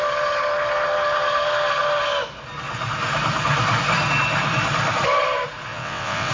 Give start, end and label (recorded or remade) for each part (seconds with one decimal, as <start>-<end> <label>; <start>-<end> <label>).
0.0-5.7 recorded; 5.7-6.3 remade